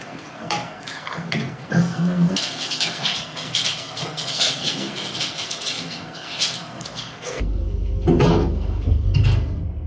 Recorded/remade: remade